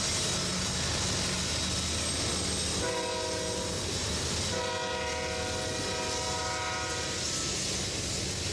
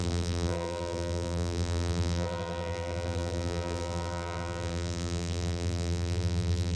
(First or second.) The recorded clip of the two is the first